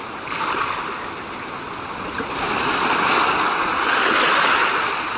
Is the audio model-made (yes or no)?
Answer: no